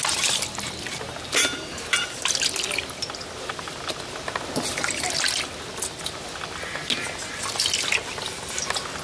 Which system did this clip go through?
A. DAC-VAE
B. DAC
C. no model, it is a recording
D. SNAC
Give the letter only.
C